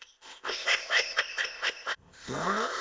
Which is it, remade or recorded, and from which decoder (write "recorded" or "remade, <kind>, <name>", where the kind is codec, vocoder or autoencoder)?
remade, codec, ZipCodec